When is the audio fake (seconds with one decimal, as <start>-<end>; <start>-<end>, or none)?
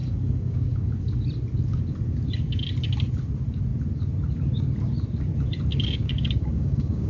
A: 0.0-0.9; 5.7-7.1